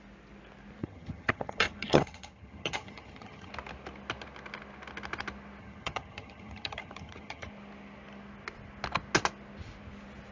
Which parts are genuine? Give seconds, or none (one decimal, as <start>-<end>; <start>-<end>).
0.0-0.8; 3.5-5.6; 7.5-10.3